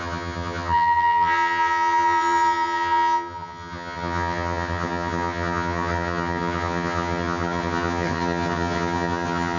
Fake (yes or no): yes